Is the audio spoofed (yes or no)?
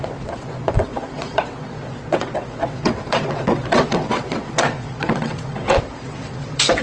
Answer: yes